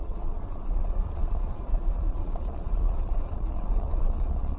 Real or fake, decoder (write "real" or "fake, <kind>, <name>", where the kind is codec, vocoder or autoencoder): fake, vocoder, Vocos